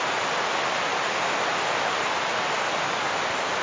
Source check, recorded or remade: recorded